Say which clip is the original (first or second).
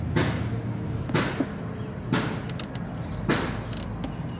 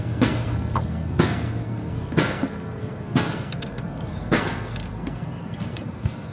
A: first